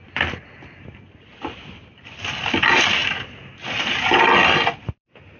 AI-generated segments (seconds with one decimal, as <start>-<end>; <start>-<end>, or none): none

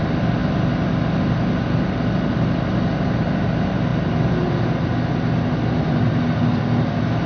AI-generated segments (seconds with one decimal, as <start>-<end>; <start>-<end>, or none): none

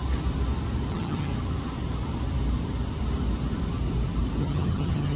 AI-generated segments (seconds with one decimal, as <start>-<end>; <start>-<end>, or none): 0.9-1.3; 4.4-5.2

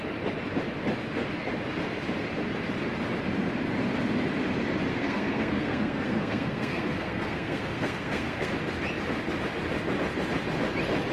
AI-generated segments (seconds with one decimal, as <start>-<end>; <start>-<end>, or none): 4.9-8.5